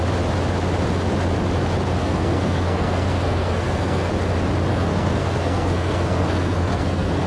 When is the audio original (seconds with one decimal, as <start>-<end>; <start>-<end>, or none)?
0.0-2.0; 4.1-4.7